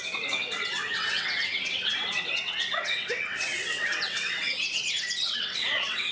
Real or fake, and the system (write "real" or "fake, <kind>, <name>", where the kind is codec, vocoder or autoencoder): fake, vocoder, WaveNeXt